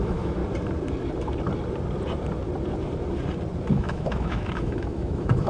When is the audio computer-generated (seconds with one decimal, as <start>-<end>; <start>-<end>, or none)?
0.0-0.4; 3.7-5.5